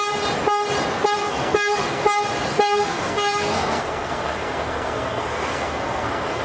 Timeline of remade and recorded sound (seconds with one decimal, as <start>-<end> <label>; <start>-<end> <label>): 0.0-1.2 recorded; 1.2-2.0 remade; 2.0-2.5 recorded; 2.5-6.4 remade